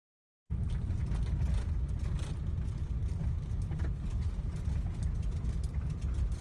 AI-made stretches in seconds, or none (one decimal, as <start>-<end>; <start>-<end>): none